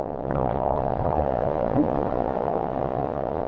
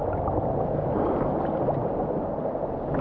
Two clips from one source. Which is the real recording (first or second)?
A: second